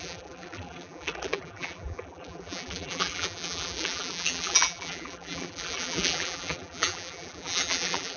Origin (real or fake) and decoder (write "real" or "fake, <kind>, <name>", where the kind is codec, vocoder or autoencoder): fake, vocoder, BigVGAN v2